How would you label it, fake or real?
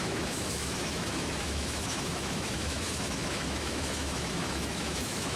fake